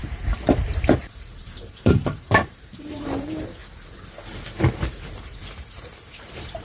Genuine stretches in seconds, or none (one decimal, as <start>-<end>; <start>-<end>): 3.6-4.6